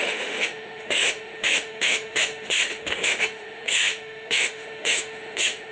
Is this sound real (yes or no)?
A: no